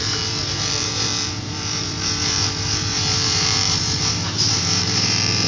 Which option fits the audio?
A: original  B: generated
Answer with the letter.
B